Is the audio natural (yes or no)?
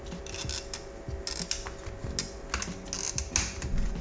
yes